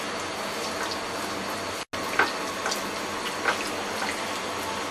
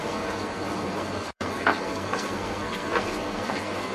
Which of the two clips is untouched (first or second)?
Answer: first